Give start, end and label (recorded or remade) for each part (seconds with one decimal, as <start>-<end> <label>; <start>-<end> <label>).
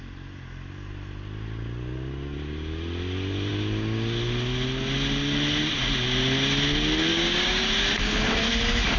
0.0-7.1 recorded; 7.1-7.7 remade; 7.7-9.0 recorded